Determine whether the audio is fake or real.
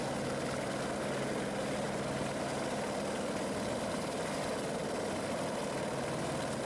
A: real